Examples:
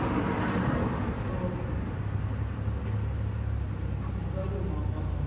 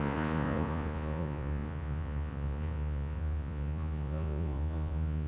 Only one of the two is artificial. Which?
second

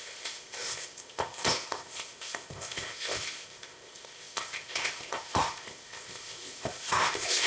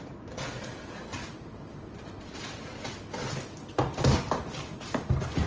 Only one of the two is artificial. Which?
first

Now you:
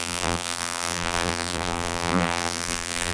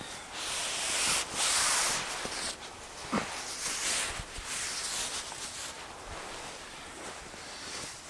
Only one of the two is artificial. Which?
first